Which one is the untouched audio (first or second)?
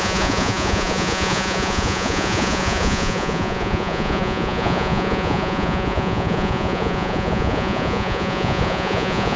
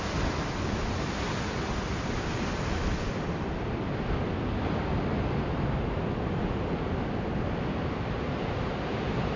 second